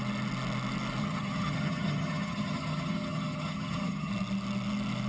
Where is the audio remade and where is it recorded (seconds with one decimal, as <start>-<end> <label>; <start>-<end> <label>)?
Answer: 0.0-1.0 recorded; 1.0-4.1 remade; 4.1-5.1 recorded